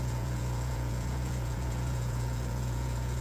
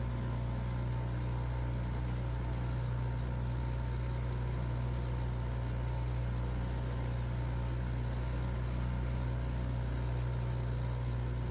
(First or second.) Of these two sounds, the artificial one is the first